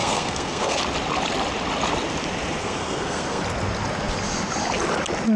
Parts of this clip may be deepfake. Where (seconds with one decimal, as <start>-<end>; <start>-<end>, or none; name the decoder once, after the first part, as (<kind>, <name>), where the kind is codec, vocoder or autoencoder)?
0.0-0.8 (codec, SNAC); 2.6-3.4